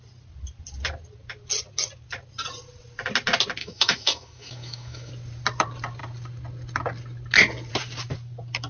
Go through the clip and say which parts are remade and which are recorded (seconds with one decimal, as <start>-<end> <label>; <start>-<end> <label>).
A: 0.0-3.6 recorded; 3.6-5.1 remade; 5.1-8.7 recorded